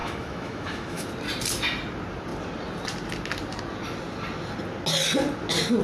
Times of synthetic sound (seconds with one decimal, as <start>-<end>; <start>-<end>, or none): 0.0-1.1